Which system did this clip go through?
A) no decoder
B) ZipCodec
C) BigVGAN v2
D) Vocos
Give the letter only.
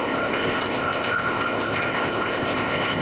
B